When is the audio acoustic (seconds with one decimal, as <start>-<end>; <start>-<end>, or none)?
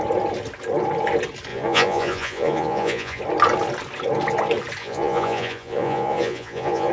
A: 0.0-1.5; 3.2-4.8